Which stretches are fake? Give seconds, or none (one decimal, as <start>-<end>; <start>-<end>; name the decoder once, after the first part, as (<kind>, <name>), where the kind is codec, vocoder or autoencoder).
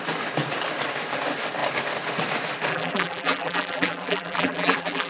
2.7-5.1 (vocoder, BigVGAN v2)